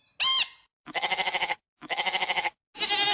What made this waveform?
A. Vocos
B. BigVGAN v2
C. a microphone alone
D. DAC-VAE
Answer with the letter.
C